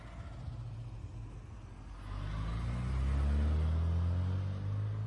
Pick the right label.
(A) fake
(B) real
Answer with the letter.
B